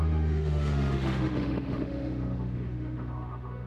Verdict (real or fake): fake